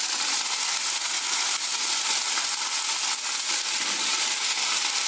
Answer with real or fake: real